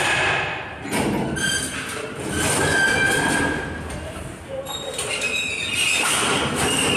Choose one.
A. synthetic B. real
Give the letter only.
B